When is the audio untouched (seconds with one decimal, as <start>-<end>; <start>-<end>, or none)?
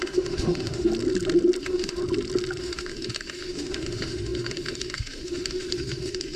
0.9-1.6; 2.0-2.6